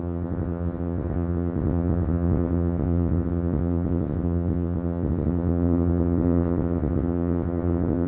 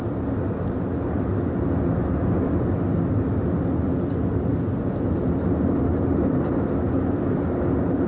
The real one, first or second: second